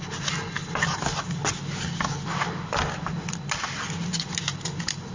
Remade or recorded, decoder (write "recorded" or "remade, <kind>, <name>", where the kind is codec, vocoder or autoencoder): recorded